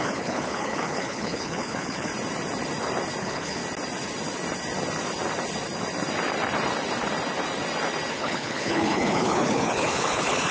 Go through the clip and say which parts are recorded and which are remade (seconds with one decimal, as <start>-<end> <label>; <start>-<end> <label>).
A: 0.0-2.1 remade; 2.1-3.2 recorded; 3.2-3.6 remade; 3.6-8.1 recorded; 8.1-10.5 remade